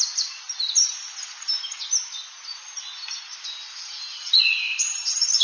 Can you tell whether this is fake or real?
real